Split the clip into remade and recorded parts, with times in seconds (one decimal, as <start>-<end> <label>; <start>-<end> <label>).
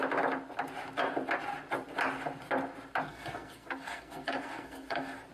0.0-3.1 recorded; 3.1-5.3 remade